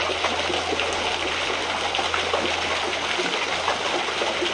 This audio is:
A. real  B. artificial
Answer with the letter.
A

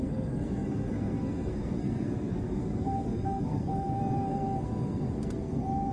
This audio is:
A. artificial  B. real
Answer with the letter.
A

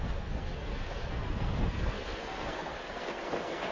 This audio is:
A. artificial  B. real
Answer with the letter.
A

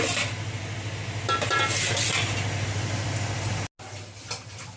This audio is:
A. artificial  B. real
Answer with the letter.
B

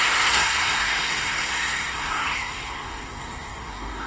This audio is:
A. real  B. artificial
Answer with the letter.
B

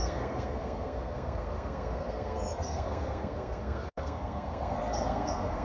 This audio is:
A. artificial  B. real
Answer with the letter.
A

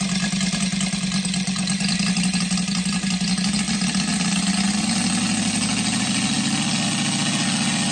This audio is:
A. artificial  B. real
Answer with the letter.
B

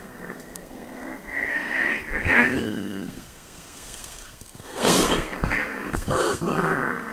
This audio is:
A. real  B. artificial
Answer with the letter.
B